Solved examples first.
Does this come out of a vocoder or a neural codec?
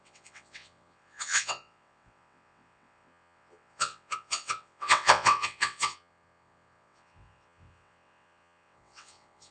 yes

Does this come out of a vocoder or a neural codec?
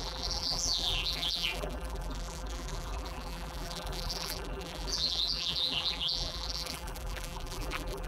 yes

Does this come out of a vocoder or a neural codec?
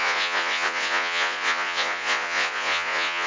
yes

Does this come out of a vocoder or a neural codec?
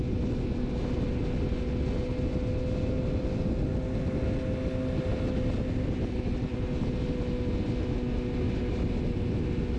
no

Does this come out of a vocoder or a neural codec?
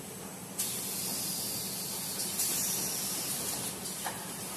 no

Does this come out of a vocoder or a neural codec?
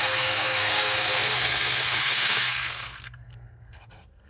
yes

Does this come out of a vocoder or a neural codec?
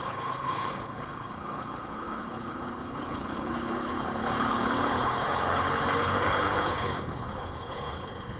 yes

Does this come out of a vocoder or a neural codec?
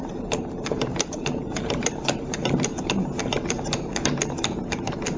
yes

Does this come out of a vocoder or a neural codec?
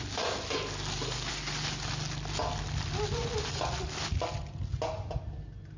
no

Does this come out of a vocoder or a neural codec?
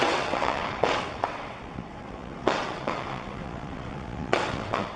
yes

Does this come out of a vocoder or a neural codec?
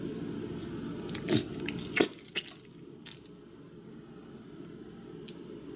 no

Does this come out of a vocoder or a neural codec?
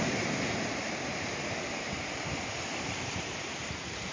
yes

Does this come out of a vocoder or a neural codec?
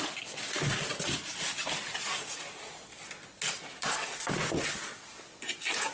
no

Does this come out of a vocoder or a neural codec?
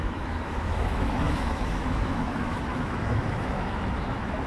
yes